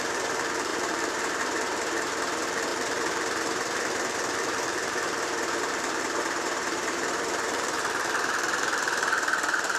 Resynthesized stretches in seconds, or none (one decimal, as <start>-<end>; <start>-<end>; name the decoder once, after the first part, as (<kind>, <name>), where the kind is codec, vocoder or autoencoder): 0.0-9.8 (vocoder, BigVGAN v2)